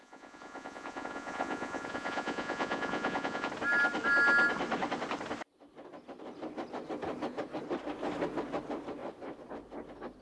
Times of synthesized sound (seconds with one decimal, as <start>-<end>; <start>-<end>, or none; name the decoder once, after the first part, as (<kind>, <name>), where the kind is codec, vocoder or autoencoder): 0.0-3.5 (vocoder, Vocos)